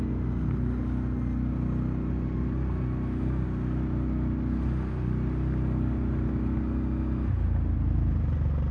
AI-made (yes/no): no